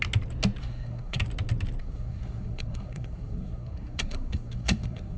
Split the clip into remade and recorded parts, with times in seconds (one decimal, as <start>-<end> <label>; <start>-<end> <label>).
0.0-0.6 recorded; 0.6-1.2 remade; 1.2-1.8 recorded; 1.8-5.2 remade